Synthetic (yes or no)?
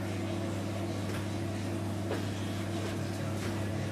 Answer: no